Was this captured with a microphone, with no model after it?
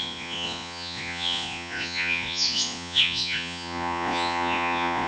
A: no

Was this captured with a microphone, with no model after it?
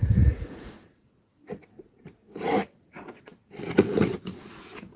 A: no